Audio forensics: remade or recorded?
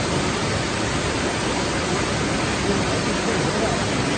recorded